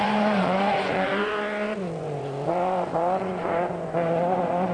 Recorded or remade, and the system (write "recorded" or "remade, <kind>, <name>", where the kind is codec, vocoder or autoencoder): remade, vocoder, Vocos